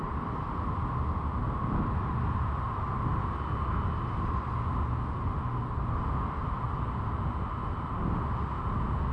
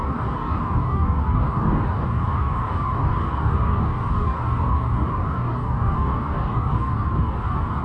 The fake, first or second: second